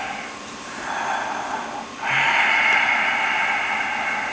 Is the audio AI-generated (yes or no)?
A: no